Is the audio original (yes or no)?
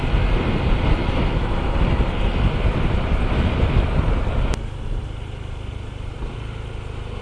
yes